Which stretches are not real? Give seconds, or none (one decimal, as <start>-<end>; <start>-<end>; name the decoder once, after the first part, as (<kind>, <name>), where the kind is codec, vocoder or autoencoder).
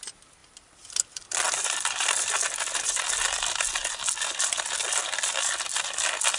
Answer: 0.4-2.4 (vocoder, BigVGAN v2)